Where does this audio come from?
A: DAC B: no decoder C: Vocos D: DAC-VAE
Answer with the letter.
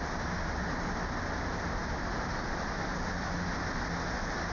B